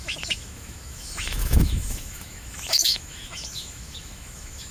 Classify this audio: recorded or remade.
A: remade